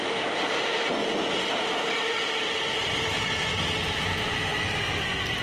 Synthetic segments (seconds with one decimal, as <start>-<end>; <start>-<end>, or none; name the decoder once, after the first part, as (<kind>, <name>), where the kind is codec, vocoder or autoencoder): 1.0-3.2 (vocoder, BigVGAN v2)